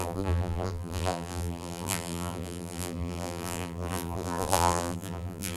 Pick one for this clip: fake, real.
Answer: fake